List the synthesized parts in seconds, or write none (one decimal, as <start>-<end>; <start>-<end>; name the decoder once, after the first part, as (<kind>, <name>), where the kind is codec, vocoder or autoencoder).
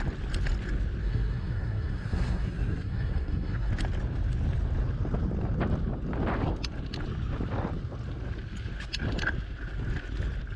1.0-3.7 (codec, SNAC)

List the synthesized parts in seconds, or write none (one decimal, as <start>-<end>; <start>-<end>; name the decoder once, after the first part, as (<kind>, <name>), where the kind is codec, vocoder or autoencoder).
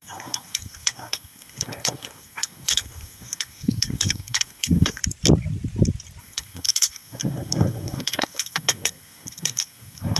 0.0-5.0 (codec, SNAC); 6.2-10.2